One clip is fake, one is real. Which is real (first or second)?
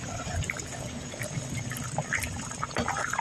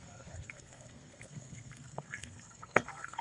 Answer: first